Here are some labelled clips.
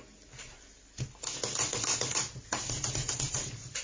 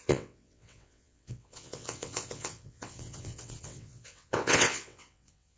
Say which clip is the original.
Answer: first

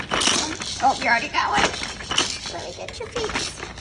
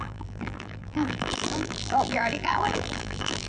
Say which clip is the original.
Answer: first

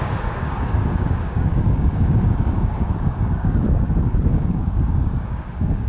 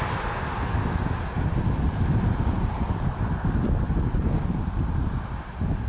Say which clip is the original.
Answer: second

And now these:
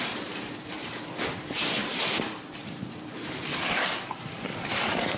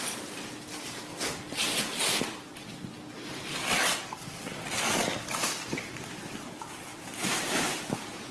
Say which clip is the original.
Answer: second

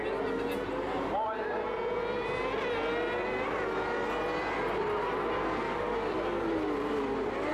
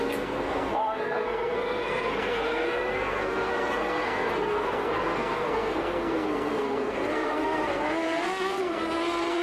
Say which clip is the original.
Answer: first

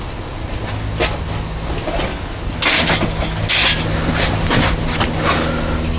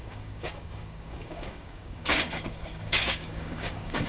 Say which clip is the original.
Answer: first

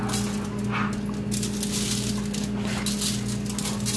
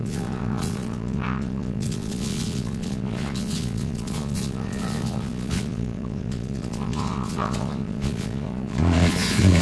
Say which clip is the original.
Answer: first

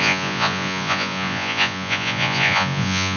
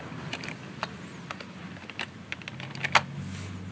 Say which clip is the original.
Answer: second